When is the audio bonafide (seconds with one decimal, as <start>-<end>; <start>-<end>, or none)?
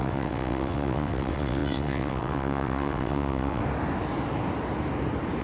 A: 3.6-5.4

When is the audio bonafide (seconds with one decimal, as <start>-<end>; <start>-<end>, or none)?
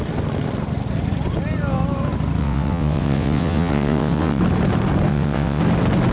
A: 0.0-2.4; 4.4-5.1; 5.6-6.1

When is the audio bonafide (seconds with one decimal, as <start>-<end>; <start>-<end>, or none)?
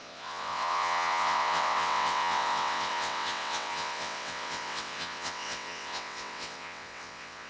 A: none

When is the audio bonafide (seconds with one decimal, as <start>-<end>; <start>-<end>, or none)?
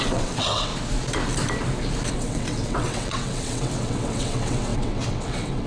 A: 0.7-2.1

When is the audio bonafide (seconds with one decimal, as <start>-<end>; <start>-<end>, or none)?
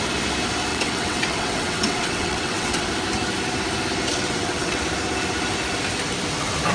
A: 0.0-0.7; 2.9-4.1; 4.8-6.7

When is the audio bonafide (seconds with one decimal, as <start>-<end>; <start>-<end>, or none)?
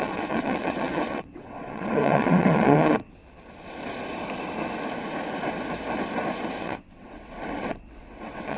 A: 3.2-6.6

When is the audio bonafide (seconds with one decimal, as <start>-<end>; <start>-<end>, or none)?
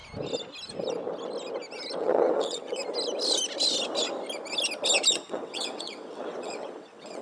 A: 0.0-2.0; 2.8-5.1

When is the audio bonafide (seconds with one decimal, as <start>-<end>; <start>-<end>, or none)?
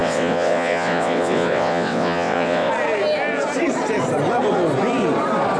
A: 2.7-5.6